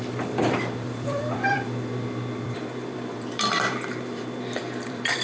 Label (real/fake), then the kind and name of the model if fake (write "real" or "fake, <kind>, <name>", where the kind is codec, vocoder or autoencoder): fake, vocoder, BigVGAN v2